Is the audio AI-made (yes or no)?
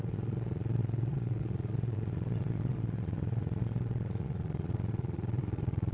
yes